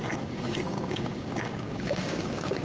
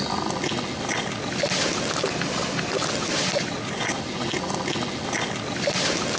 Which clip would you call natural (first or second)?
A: second